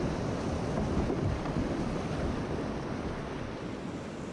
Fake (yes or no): no